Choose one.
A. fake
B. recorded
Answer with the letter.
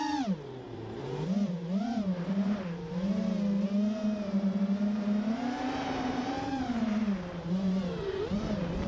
A